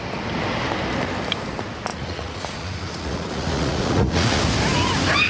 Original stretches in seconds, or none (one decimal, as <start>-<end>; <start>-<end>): 0.0-1.9; 4.4-5.3